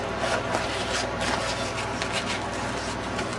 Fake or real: real